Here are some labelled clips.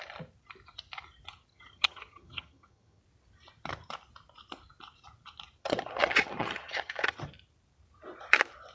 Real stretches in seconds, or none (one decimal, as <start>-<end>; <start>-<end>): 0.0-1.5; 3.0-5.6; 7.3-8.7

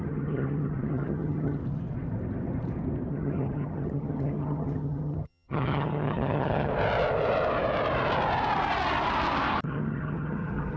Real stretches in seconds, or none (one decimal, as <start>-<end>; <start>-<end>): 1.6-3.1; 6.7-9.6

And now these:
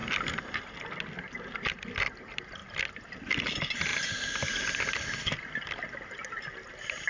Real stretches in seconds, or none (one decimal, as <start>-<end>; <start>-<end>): 0.0-7.1

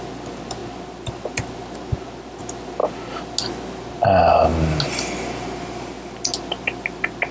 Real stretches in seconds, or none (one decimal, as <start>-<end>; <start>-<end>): 0.0-7.3

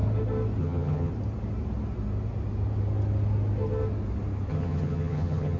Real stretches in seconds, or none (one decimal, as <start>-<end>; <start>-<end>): 0.0-0.6; 1.1-4.5